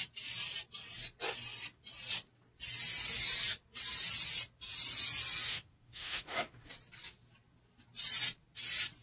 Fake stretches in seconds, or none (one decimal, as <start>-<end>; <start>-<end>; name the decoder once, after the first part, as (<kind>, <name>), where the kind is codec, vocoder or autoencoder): 5.5-6.7 (autoencoder, DAC-VAE)